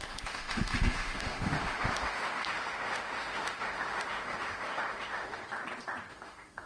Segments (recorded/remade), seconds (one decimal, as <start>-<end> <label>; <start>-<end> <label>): 0.0-5.4 remade; 5.4-6.1 recorded; 6.1-6.7 remade